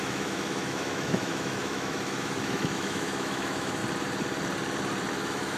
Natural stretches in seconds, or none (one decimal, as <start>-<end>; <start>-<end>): 3.8-5.1